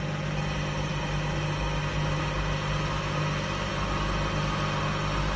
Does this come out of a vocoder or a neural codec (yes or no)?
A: no